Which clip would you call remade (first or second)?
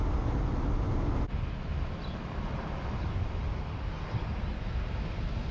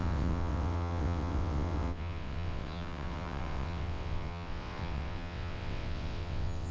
second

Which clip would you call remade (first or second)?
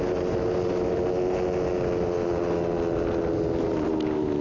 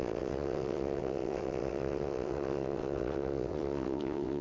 second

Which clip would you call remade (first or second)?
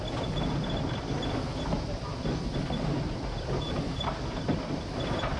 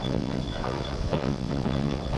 second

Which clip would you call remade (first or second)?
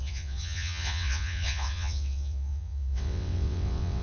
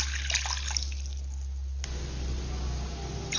first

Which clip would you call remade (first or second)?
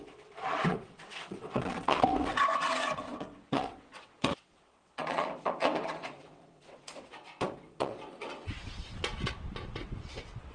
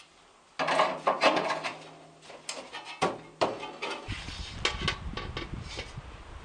first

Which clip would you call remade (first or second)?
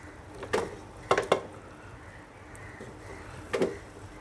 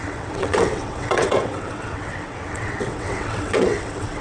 second